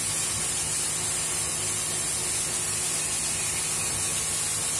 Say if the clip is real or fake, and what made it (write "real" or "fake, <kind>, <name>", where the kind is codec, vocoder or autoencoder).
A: real